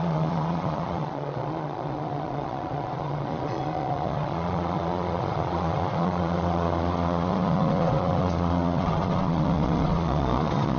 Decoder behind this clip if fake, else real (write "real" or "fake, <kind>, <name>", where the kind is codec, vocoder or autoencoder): fake, vocoder, Vocos